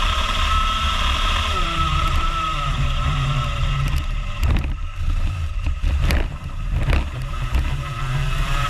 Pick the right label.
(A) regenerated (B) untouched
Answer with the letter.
A